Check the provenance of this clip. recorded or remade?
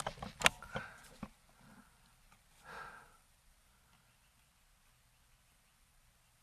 recorded